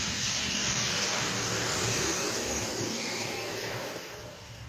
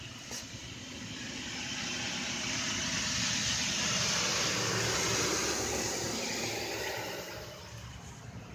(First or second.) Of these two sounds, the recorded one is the second